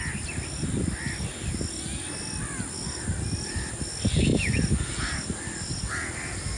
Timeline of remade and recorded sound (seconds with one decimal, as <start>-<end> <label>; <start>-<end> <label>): 0.0-6.6 recorded